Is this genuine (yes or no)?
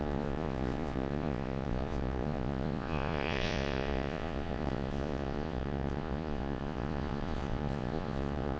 no